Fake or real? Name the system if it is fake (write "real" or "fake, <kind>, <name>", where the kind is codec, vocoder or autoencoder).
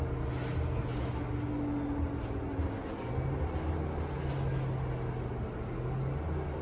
real